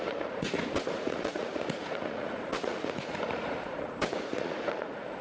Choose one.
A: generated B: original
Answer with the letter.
A